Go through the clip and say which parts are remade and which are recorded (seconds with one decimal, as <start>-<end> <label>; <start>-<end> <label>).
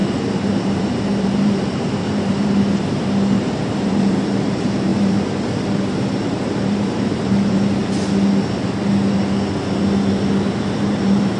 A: 0.0-0.6 recorded; 0.6-7.8 remade; 7.8-10.8 recorded; 10.8-11.4 remade